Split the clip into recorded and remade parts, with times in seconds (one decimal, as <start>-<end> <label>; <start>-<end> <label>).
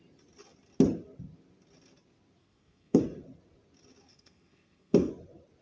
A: 0.0-2.4 recorded; 2.4-3.0 remade; 3.0-4.1 recorded; 4.1-5.1 remade; 5.1-5.6 recorded